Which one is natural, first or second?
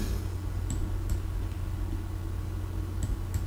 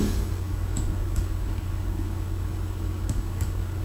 first